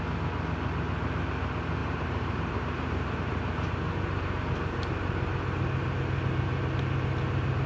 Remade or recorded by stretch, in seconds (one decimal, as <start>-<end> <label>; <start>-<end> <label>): 0.0-1.8 recorded; 1.8-3.7 remade; 3.7-7.7 recorded